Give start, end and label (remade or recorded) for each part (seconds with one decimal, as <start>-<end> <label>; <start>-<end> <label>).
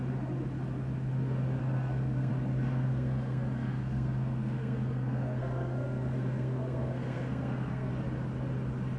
0.0-1.6 recorded; 1.6-2.3 remade; 2.3-2.7 recorded; 2.7-7.9 remade; 7.9-9.0 recorded